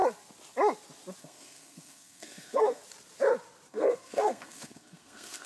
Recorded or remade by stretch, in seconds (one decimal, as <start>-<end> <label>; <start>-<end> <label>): 0.0-1.2 recorded; 1.2-2.8 remade; 2.8-3.7 recorded; 3.7-5.5 remade